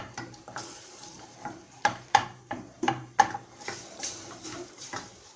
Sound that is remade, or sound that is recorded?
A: remade